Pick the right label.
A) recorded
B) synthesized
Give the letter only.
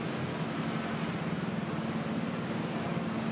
A